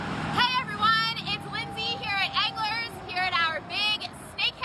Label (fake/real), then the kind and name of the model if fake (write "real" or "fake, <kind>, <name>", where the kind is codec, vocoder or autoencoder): real